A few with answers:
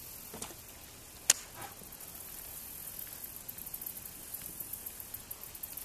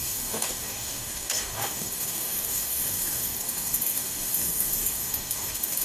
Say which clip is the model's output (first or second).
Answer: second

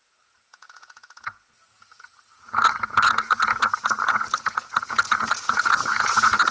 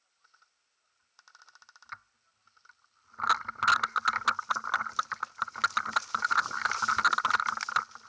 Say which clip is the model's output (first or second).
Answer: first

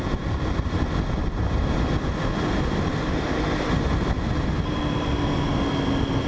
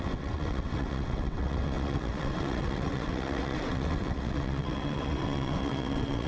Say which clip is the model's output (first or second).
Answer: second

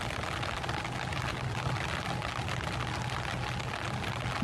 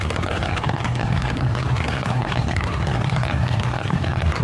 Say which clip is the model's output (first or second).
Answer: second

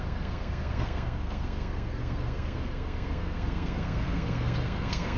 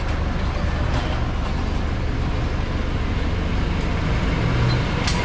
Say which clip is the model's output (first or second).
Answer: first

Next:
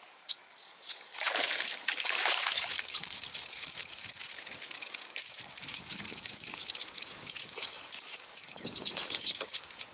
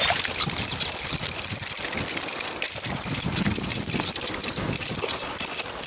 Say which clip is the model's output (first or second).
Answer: first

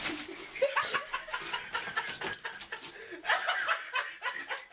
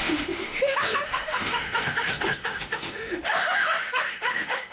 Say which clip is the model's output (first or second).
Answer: second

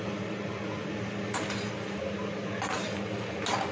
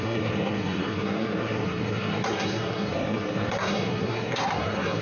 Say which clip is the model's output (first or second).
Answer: second